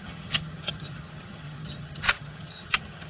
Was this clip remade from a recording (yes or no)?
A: yes